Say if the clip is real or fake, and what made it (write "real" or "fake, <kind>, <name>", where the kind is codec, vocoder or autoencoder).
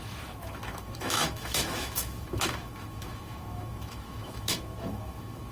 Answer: fake, autoencoder, DAC-VAE